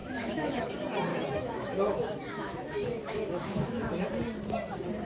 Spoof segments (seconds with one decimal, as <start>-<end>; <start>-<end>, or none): 0.0-0.7; 1.1-4.1